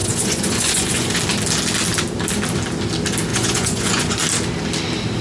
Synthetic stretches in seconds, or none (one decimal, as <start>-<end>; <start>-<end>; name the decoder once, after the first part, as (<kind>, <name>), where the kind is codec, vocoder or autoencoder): 0.0-1.2 (vocoder, Vocos); 3.3-4.2